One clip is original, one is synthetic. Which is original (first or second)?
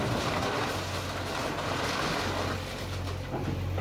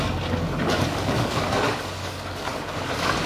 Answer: first